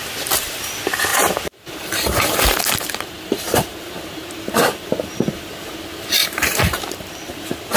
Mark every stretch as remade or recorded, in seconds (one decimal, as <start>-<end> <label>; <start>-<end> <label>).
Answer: 0.0-1.1 recorded; 1.1-5.8 remade; 5.8-6.2 recorded; 6.2-7.3 remade; 7.3-7.8 recorded